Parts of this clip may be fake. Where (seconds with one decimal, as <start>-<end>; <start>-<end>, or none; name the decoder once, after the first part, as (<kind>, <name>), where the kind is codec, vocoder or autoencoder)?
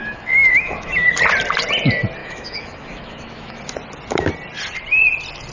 0.0-1.1 (autoencoder, DAC-VAE); 2.2-3.6